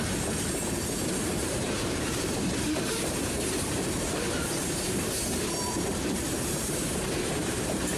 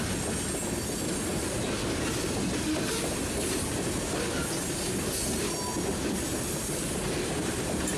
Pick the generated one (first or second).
first